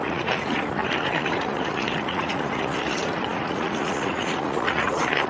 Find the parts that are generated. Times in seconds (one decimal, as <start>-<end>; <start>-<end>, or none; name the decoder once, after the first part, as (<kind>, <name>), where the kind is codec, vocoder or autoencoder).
0.0-5.3 (vocoder, Vocos)